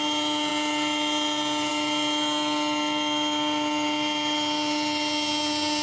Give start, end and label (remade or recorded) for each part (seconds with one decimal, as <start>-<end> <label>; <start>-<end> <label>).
0.0-5.8 recorded